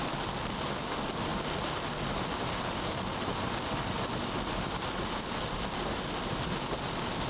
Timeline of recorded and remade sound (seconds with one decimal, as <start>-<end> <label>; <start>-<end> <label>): 0.0-7.3 recorded